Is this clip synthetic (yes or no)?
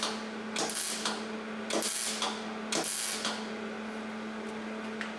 no